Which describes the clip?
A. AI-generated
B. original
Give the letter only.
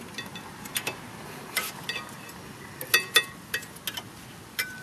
B